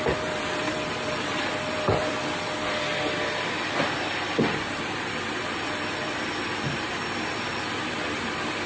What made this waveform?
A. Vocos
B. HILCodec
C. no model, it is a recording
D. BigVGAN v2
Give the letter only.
D